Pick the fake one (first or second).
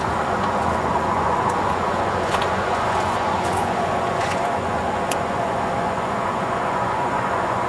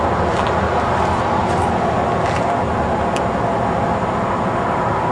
first